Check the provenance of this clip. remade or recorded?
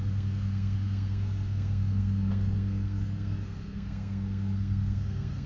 remade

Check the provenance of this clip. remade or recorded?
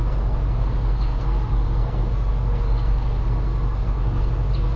remade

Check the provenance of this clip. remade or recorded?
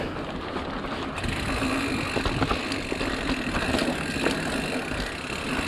recorded